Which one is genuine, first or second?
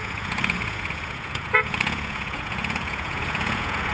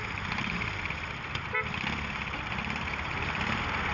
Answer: second